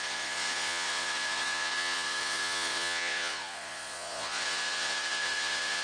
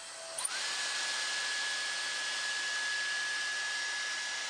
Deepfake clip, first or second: first